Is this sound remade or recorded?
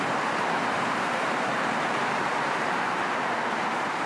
remade